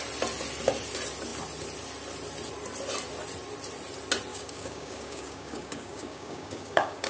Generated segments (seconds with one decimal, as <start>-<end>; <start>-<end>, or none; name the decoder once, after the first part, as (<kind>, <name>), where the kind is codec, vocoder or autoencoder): 4.3-7.1 (codec, DAC)